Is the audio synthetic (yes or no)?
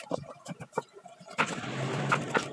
no